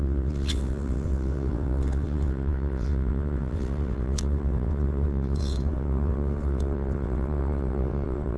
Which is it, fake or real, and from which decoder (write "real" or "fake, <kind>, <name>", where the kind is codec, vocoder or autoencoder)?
fake, vocoder, WaveNeXt